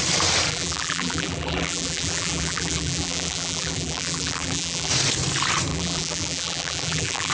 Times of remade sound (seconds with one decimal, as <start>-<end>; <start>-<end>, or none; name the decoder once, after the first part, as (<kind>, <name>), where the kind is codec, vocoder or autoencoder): 0.5-4.9 (vocoder, BigVGAN v2); 5.7-7.3